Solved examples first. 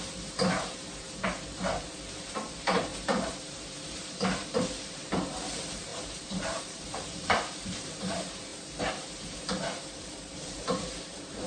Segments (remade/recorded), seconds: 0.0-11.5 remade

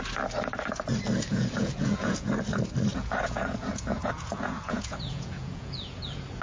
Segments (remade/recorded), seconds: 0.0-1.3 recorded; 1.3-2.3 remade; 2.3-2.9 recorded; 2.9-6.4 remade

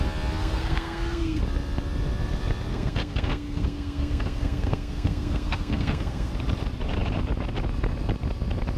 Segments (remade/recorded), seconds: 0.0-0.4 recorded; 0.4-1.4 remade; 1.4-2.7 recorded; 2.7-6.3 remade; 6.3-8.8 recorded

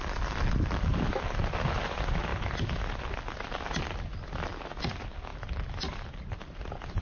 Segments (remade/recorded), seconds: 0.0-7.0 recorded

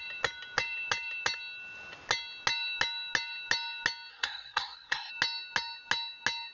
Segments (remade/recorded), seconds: 0.0-4.1 recorded; 4.1-5.1 remade; 5.1-6.5 recorded